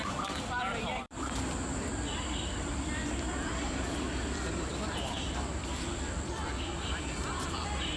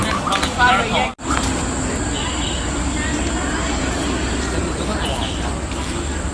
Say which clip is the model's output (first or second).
first